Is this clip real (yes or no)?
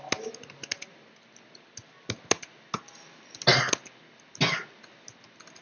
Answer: yes